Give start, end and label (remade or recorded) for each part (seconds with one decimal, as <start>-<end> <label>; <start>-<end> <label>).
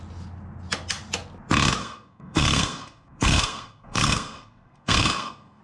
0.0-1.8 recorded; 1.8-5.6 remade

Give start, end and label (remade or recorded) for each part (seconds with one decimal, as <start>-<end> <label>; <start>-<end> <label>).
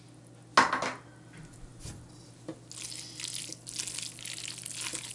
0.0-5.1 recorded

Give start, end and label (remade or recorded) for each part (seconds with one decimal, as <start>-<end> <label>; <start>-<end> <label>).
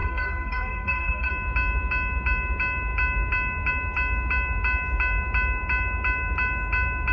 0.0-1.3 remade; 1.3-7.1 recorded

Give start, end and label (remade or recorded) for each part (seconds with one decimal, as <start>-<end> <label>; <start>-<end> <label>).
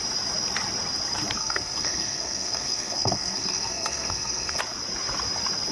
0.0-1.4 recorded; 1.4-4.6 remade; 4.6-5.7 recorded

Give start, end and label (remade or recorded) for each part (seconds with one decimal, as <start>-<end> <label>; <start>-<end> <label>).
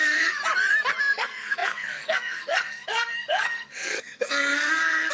0.0-0.4 remade; 0.4-1.0 recorded; 1.0-5.1 remade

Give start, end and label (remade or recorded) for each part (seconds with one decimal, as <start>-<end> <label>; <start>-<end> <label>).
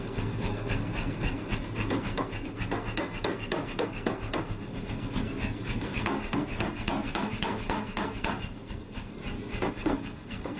0.0-9.2 remade; 9.2-9.7 recorded; 9.7-10.6 remade